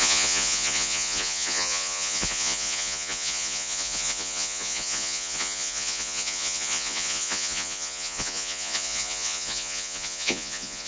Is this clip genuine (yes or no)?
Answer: no